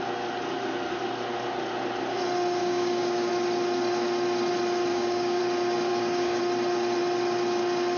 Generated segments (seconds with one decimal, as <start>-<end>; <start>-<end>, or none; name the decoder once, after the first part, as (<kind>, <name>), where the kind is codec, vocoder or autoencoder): 2.6-3.3 (codec, DAC); 4.9-5.4; 5.9-6.4

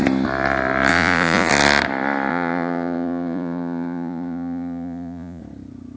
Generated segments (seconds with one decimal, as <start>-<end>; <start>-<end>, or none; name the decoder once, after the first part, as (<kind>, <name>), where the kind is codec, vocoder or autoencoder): 0.9-1.5 (vocoder, Vocos); 2.3-5.4

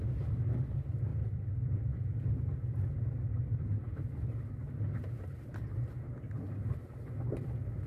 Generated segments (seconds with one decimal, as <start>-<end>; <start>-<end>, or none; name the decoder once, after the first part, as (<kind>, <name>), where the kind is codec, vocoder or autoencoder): none

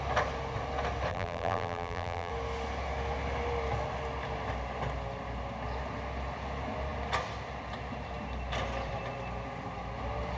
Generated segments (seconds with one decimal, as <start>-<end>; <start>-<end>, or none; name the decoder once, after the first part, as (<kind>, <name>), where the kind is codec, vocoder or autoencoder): 1.1-2.3 (vocoder, BigVGAN v2)

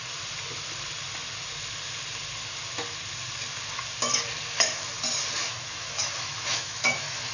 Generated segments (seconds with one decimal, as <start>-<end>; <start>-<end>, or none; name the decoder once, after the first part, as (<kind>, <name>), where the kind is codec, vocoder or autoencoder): 5.4-7.3 (autoencoder, DAC-VAE)